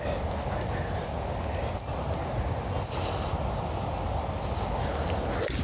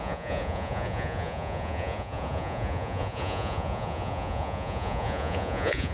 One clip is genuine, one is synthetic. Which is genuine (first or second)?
first